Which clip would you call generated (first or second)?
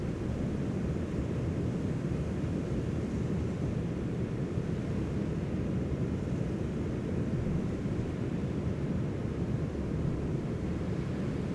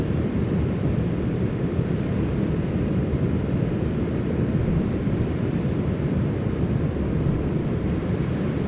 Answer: second